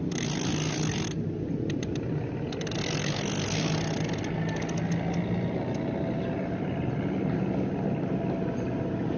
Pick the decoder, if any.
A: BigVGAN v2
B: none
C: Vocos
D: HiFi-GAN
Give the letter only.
B